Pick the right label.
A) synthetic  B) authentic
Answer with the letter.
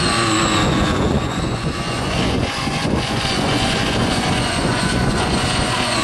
A